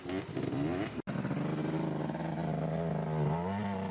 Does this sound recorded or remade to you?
recorded